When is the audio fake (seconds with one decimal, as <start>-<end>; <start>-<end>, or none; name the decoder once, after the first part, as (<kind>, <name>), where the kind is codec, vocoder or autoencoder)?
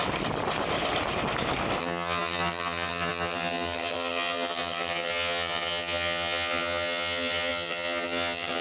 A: 1.8-8.6 (vocoder, HiFi-GAN)